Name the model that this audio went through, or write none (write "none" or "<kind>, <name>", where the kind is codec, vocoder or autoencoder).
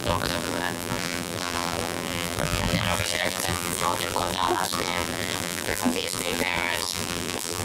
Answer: vocoder, BigVGAN v2